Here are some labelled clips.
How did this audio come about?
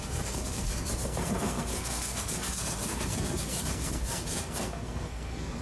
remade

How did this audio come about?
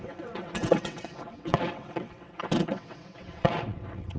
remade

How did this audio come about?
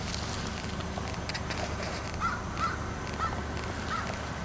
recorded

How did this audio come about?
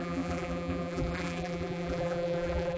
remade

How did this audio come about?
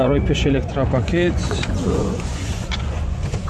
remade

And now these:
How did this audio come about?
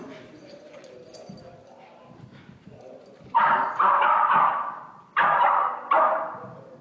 recorded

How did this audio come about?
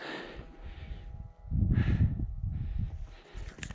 recorded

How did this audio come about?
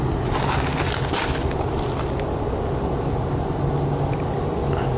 recorded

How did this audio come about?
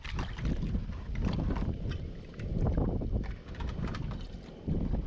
recorded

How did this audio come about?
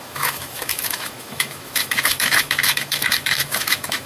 remade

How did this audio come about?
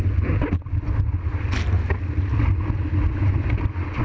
recorded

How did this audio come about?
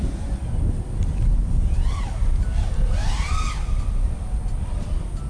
recorded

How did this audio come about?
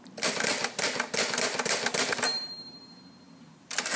recorded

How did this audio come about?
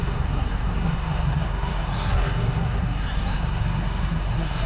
remade